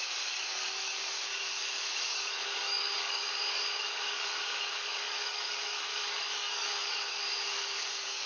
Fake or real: fake